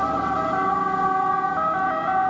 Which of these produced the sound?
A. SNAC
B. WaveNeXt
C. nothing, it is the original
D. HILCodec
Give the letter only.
C